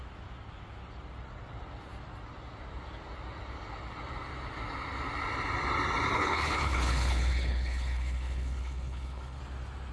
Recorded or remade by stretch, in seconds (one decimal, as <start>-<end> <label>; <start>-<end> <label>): 0.0-6.1 recorded; 6.1-9.4 remade; 9.4-9.9 recorded